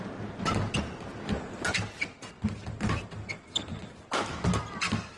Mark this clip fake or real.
real